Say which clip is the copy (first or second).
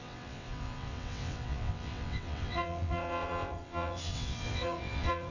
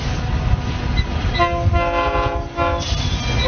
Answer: first